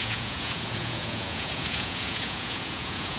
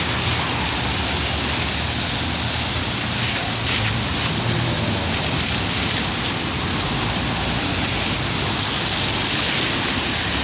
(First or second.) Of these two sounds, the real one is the second